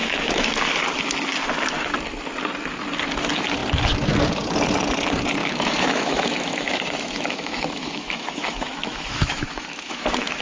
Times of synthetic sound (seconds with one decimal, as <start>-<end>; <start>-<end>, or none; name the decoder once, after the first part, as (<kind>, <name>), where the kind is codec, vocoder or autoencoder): 0.0-0.5 (autoencoder, DAC-VAE); 5.4-10.4